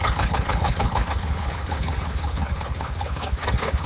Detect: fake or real fake